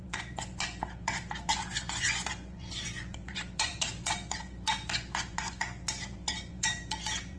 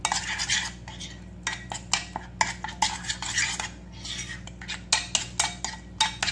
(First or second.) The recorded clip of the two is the second